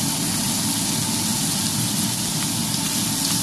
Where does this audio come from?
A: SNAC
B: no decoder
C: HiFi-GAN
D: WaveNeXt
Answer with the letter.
B